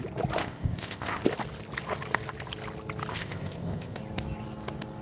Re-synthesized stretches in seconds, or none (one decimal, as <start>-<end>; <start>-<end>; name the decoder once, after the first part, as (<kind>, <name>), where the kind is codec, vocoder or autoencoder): 0.4-1.2 (codec, ZipCodec); 3.1-4.0